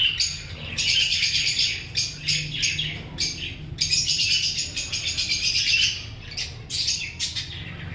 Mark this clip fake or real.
real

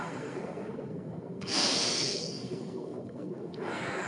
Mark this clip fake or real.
fake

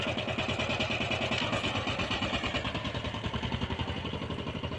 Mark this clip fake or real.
real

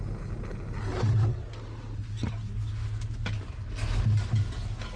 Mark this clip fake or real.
real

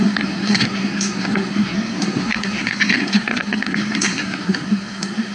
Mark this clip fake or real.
fake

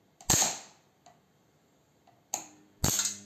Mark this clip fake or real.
real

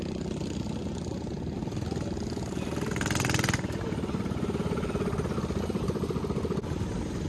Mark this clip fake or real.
real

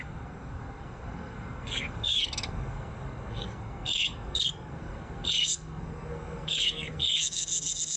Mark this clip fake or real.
fake